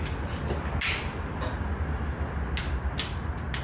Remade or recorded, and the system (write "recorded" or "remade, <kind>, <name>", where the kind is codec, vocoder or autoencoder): recorded